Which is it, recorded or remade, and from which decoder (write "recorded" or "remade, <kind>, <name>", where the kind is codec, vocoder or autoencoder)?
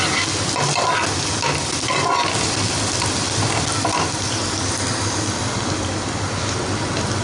recorded